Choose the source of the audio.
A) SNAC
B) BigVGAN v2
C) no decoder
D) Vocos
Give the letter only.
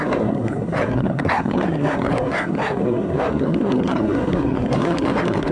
A